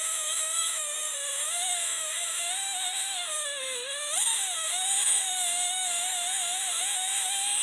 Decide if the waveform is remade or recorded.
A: remade